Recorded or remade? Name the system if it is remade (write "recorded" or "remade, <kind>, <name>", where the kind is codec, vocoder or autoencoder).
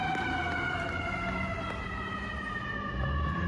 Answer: recorded